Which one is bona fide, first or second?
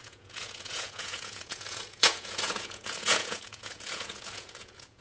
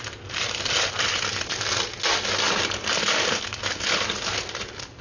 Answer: second